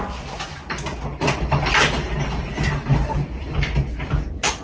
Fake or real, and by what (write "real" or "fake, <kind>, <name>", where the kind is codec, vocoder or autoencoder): real